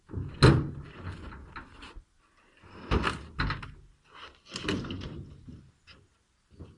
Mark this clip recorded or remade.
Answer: recorded